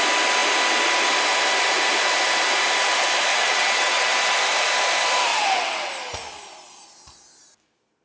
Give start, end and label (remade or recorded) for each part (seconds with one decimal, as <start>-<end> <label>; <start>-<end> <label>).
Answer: 0.0-3.3 recorded; 3.3-4.1 remade; 4.1-5.3 recorded; 5.3-5.9 remade; 5.9-8.0 recorded